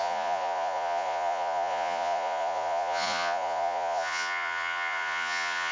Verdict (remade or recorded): remade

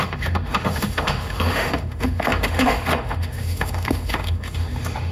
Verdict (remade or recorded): remade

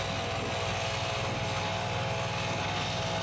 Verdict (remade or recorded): recorded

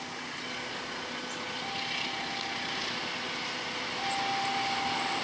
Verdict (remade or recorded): recorded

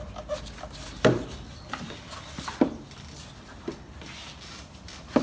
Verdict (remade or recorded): recorded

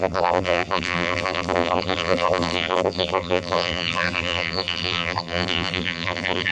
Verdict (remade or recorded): remade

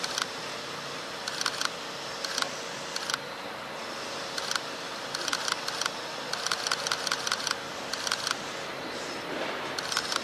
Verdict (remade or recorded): recorded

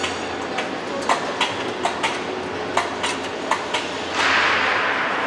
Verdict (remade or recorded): recorded